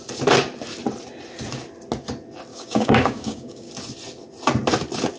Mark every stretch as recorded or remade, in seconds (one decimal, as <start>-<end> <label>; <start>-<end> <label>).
0.0-2.5 recorded; 2.5-3.7 remade; 3.7-5.2 recorded